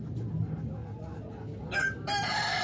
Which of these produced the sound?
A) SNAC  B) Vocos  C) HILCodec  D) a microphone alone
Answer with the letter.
D